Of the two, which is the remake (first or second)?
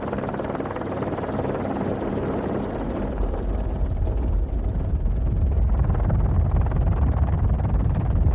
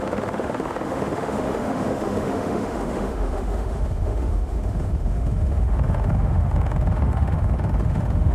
second